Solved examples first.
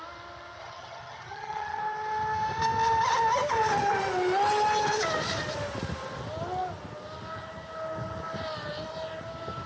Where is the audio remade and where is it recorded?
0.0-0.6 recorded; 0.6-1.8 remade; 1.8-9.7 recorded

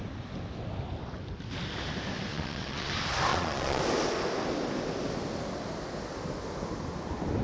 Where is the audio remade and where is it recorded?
0.0-2.3 recorded; 2.3-2.9 remade; 2.9-3.3 recorded; 3.3-3.8 remade; 3.8-7.4 recorded

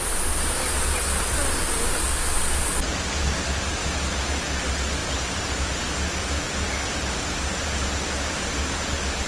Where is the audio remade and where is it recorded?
0.0-3.8 recorded; 3.8-4.4 remade; 4.4-9.3 recorded

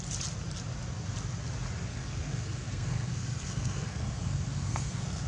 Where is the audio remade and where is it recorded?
0.0-1.9 recorded; 1.9-5.3 remade